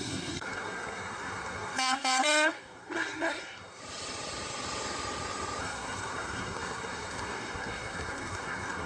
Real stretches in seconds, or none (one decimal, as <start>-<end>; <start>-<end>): 3.8-5.6

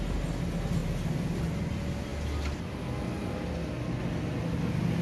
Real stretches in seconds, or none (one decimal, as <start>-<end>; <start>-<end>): 0.0-5.0